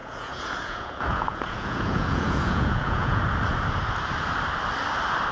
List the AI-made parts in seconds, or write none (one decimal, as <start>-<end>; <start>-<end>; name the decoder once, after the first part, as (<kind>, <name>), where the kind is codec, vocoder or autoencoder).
0.0-3.2 (vocoder, Vocos)